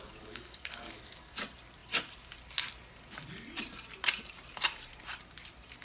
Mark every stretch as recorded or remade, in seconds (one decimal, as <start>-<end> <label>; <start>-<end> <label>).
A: 0.0-1.4 remade; 1.4-5.8 recorded